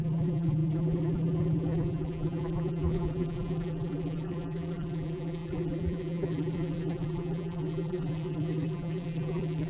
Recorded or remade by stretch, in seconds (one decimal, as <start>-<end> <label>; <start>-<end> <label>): 0.0-9.7 remade